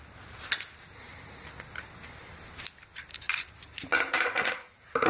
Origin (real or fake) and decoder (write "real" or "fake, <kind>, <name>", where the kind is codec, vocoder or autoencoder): real